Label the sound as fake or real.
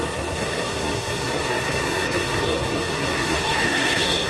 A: fake